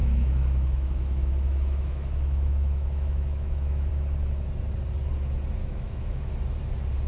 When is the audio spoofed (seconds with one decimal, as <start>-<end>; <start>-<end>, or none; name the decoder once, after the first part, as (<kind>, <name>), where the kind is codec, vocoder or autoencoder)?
0.0-3.9 (autoencoder, DAC-VAE); 5.6-6.3